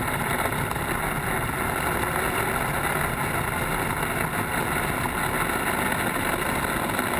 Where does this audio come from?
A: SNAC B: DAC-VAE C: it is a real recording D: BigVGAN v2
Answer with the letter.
C